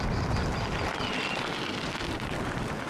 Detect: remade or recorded recorded